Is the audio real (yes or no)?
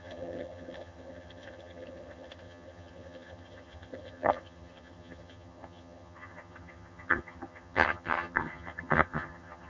no